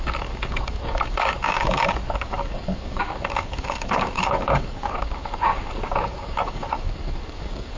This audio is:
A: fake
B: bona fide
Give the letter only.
A